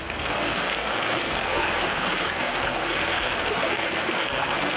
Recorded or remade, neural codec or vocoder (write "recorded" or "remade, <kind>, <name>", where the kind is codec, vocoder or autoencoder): remade, codec, SNAC